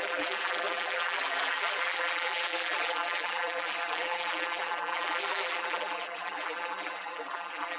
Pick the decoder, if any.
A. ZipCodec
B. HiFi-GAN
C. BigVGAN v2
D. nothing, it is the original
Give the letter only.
C